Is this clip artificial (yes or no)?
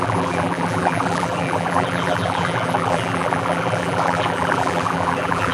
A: yes